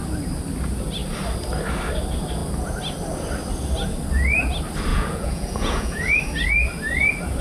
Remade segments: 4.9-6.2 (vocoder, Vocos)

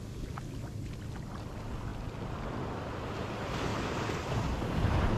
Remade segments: none